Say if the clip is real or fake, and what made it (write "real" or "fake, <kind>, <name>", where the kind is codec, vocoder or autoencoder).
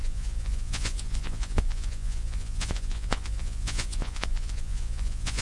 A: fake, vocoder, Vocos